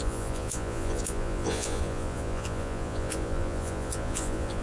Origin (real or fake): fake